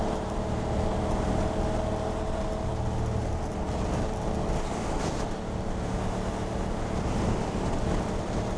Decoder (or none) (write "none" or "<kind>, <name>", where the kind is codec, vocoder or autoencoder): none